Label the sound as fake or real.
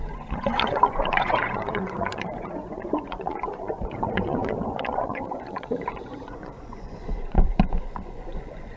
fake